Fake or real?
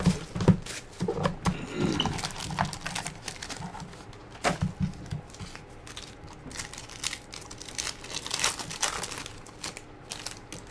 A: real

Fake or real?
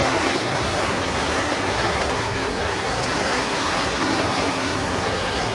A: fake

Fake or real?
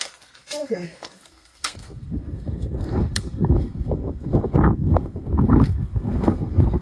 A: fake